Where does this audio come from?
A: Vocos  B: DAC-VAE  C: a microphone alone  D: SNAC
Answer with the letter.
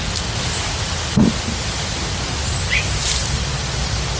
C